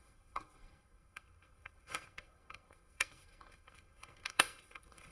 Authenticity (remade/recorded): remade